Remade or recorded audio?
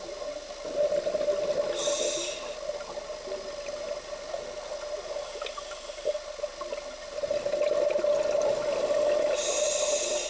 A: recorded